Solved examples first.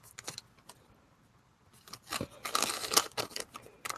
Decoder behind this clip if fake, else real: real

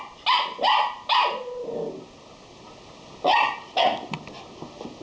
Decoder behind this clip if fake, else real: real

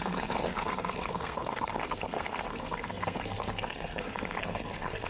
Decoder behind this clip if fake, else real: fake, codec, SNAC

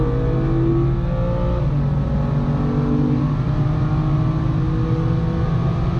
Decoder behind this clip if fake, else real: real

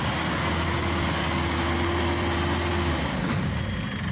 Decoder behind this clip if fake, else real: real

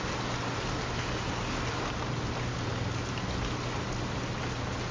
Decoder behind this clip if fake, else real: real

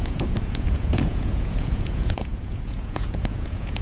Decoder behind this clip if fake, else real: fake, vocoder, Vocos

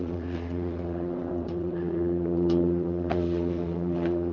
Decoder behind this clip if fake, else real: fake, vocoder, WaveNeXt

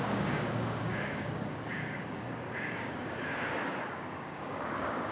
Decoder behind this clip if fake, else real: fake, codec, DAC